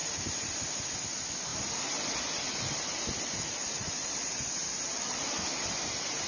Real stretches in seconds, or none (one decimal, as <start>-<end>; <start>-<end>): 0.0-6.3